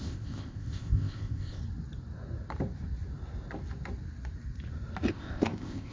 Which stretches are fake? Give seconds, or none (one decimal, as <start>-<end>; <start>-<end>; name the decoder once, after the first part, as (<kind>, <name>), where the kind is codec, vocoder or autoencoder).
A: 0.0-1.6 (codec, ZipCodec); 5.1-5.9